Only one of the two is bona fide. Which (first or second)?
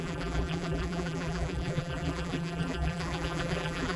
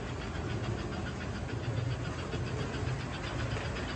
second